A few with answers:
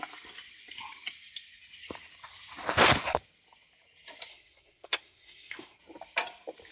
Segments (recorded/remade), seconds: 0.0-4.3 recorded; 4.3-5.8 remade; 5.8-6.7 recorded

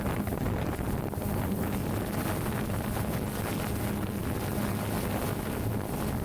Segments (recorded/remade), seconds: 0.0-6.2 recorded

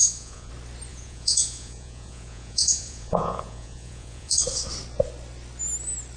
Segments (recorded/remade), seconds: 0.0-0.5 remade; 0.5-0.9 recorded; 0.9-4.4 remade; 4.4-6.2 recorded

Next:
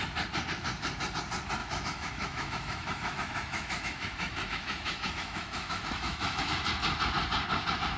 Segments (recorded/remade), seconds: 0.0-1.6 recorded; 1.6-6.4 remade; 6.4-8.0 recorded